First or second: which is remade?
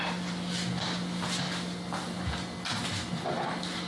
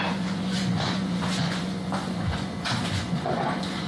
second